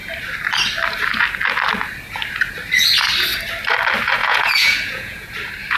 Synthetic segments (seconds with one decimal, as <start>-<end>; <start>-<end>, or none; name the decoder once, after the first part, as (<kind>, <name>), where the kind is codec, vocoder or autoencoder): 4.2-5.3 (vocoder, Vocos)